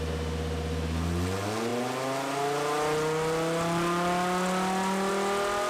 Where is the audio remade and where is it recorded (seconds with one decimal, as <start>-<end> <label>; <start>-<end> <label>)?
0.0-5.7 recorded